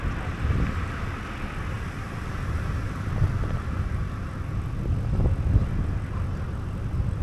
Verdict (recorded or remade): recorded